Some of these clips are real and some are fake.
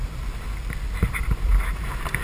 real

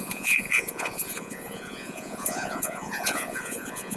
fake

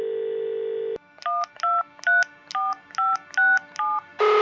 real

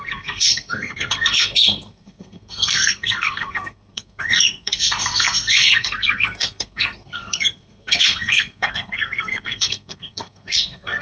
fake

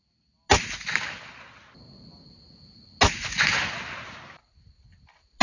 real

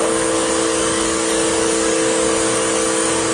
fake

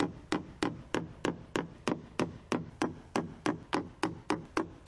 real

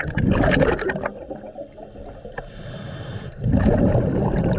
real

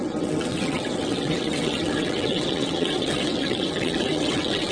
fake